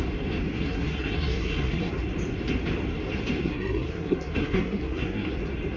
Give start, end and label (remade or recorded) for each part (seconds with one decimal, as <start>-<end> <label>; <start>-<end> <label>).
0.0-0.5 recorded; 0.5-1.9 remade; 1.9-3.4 recorded; 3.4-5.3 remade; 5.3-5.8 recorded